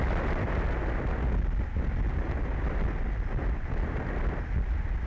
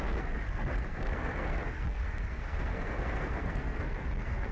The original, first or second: first